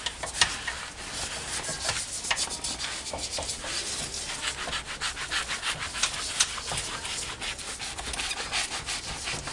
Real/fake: real